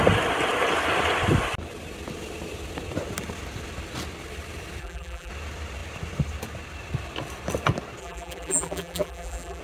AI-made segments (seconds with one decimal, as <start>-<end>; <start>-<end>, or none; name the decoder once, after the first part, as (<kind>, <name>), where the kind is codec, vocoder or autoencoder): 4.8-5.3 (vocoder, BigVGAN v2); 8.0-9.6